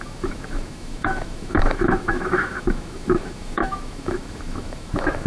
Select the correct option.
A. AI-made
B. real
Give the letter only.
A